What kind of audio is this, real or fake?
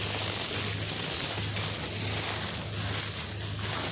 real